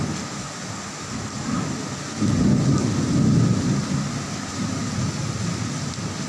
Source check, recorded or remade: recorded